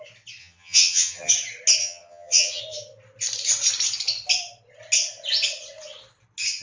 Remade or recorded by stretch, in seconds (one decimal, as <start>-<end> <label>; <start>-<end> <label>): 0.0-0.4 recorded; 0.4-1.3 remade; 1.3-1.8 recorded; 1.8-2.6 remade; 2.6-6.6 recorded